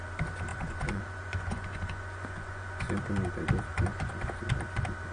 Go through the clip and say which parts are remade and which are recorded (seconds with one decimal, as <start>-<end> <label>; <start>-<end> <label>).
0.0-0.5 recorded; 0.5-2.9 remade; 2.9-3.7 recorded; 3.7-4.4 remade; 4.4-5.1 recorded